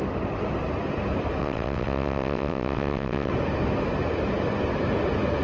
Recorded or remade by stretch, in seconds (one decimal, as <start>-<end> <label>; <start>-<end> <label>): 0.0-1.4 recorded; 1.4-3.3 remade; 3.3-5.4 recorded